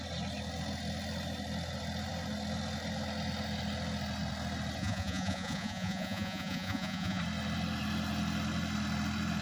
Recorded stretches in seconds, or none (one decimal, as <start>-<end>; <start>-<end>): 0.0-4.8; 7.2-9.4